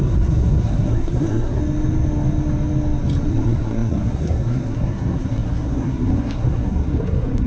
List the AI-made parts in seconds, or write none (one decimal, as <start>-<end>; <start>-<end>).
0.0-1.6; 3.3-7.5